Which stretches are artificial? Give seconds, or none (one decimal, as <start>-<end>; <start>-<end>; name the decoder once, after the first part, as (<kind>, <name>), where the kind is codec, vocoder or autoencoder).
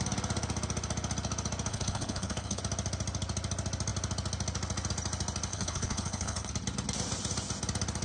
1.7-2.6 (codec, HILCodec); 5.5-6.5